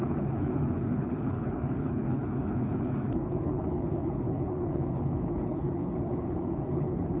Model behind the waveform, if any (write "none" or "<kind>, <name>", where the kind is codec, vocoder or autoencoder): codec, HILCodec